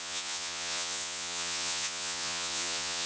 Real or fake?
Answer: fake